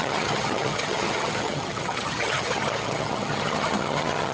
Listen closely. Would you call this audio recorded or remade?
remade